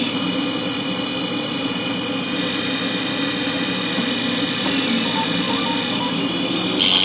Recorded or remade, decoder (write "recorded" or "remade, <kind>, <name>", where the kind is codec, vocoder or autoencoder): recorded